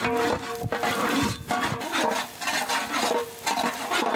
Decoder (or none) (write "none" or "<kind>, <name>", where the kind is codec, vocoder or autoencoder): none